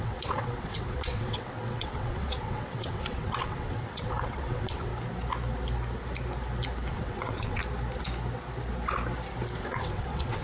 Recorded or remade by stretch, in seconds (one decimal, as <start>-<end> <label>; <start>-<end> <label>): 0.0-4.9 remade; 4.9-6.9 recorded; 6.9-7.6 remade; 7.6-9.6 recorded; 9.6-10.4 remade